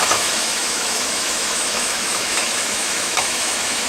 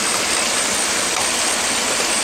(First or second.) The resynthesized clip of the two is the first